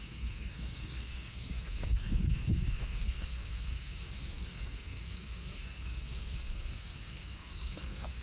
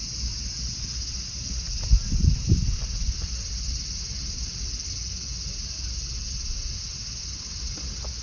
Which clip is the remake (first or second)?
first